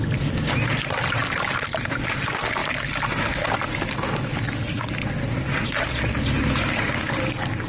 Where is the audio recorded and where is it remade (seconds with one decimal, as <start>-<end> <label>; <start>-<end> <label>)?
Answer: 0.0-7.7 recorded